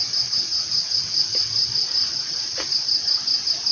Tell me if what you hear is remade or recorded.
recorded